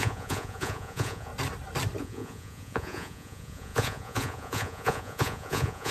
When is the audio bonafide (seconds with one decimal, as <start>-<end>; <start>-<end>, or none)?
1.3-2.0